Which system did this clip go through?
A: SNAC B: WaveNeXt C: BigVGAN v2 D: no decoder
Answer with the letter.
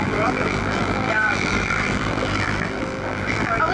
C